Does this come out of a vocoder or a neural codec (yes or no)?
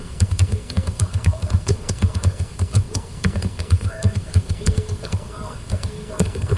yes